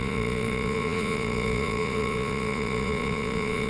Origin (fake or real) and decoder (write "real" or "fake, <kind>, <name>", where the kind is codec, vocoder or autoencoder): fake, vocoder, Vocos